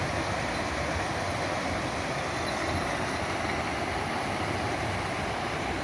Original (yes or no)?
yes